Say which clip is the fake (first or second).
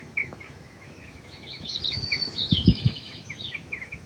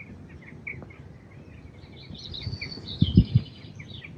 first